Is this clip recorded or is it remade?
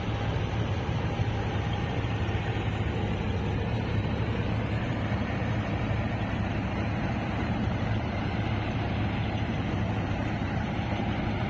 remade